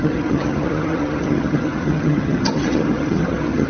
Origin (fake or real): fake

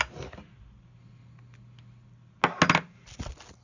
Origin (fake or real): real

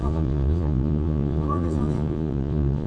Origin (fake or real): fake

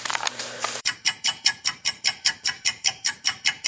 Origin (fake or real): fake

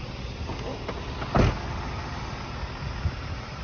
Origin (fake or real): real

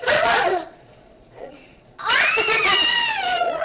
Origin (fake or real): fake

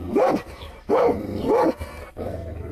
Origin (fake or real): fake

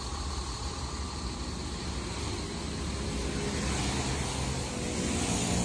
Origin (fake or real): real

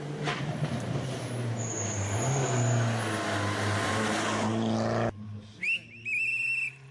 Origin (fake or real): real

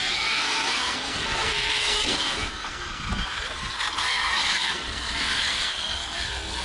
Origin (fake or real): fake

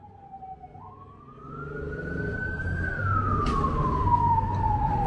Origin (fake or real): real